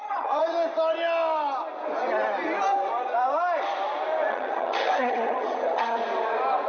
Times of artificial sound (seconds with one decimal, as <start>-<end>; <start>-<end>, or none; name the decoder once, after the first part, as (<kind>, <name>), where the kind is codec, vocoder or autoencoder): 0.0-0.4 (vocoder, HiFi-GAN); 4.3-6.0